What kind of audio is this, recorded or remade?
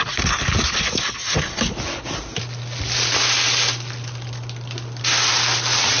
recorded